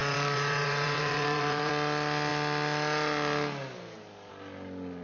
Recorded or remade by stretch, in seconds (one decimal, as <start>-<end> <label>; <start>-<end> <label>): 0.0-1.7 remade; 1.7-5.0 recorded